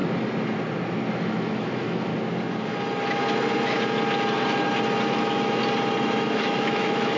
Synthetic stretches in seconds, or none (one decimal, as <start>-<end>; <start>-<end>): 1.1-2.1; 5.1-5.6; 6.4-7.2